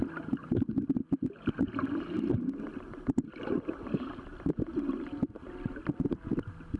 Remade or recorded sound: recorded